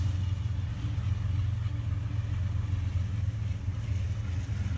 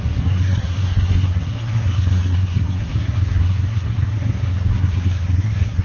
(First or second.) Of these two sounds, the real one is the first